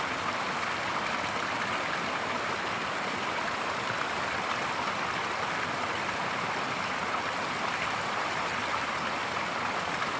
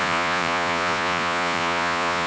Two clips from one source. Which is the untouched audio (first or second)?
first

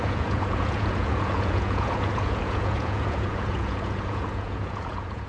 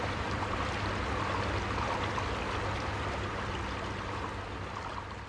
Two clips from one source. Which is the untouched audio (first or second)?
second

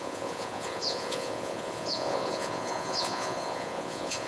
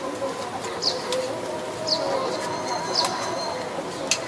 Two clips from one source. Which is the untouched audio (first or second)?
second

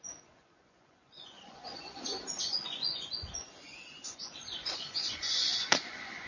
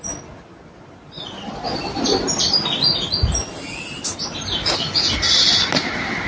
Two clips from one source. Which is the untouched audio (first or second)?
second